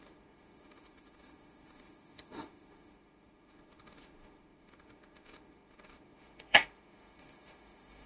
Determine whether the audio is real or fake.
fake